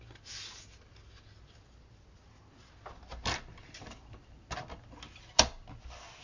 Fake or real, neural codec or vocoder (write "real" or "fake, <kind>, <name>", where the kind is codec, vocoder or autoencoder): real